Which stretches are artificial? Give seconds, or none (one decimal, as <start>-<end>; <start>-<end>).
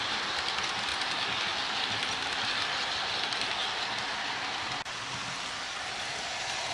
none